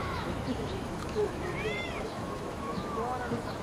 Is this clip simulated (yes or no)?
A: yes